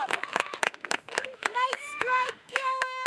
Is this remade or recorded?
remade